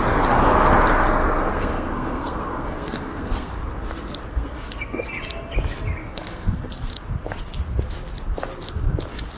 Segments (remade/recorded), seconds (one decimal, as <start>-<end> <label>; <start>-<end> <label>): 0.0-1.5 recorded; 1.5-3.5 remade; 3.5-4.3 recorded; 4.3-5.1 remade; 5.1-6.0 recorded; 6.0-6.9 remade; 6.9-9.4 recorded